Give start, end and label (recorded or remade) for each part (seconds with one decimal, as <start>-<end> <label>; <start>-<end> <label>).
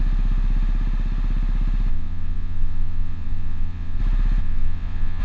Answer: 0.0-1.9 recorded; 1.9-4.0 remade; 4.0-4.4 recorded; 4.4-5.2 remade